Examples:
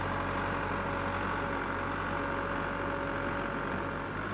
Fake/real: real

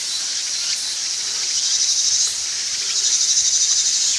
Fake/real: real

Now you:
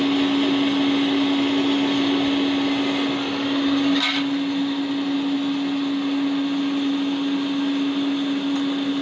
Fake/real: real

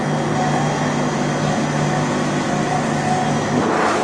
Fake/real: real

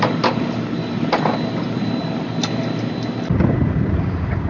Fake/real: real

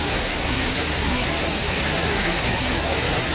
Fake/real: fake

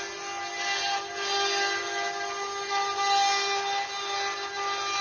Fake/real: real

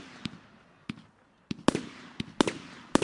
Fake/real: real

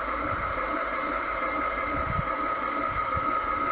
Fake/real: fake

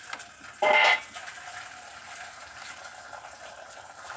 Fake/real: real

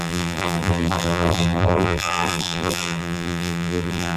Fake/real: fake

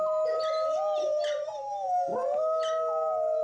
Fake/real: real